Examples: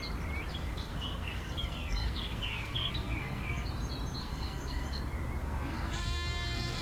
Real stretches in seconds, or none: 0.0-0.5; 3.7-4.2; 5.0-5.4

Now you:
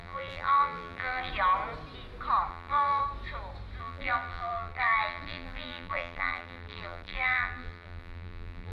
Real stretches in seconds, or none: 1.3-2.5; 3.0-3.8

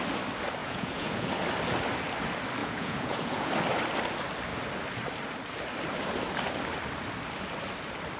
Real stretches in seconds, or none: 0.0-0.6; 1.3-2.6; 3.5-8.2

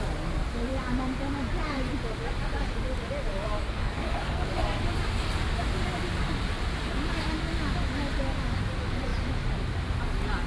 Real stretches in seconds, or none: 0.0-3.6; 4.5-10.5

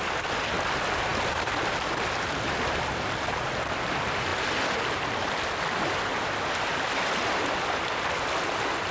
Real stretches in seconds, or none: 0.0-8.9